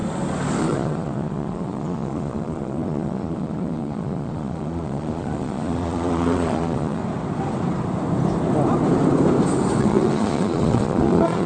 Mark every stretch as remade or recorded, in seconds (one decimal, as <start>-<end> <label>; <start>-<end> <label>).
0.0-0.6 recorded; 0.6-7.0 remade; 7.0-9.8 recorded; 9.8-11.5 remade